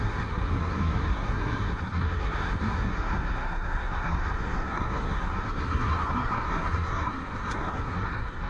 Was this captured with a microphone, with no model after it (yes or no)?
no